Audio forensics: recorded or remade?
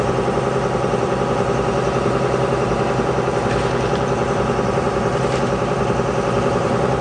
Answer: remade